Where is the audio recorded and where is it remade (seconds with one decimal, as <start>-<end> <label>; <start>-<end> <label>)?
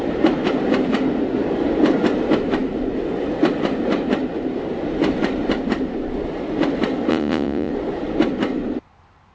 0.0-7.1 recorded; 7.1-7.7 remade; 7.7-9.3 recorded